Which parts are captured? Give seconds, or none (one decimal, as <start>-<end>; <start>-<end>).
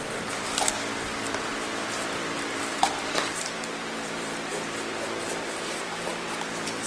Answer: 4.5-5.2